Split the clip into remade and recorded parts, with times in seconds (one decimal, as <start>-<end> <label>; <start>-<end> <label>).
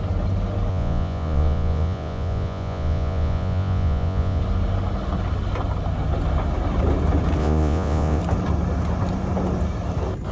0.0-0.7 recorded; 0.7-4.4 remade; 4.4-7.4 recorded; 7.4-8.2 remade; 8.2-10.3 recorded